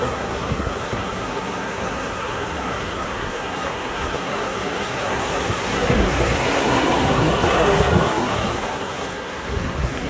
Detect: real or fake fake